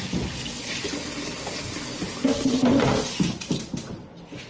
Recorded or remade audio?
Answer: recorded